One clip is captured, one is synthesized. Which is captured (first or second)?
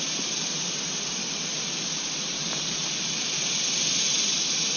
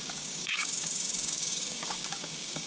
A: first